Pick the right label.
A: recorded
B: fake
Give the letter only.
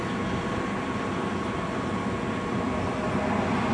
A